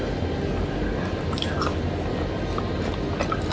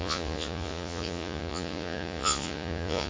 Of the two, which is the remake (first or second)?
second